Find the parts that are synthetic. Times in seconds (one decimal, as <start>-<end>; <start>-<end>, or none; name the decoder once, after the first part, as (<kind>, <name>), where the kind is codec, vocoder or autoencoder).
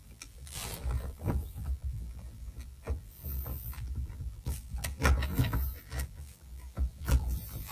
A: 0.0-7.7 (vocoder, BigVGAN v2)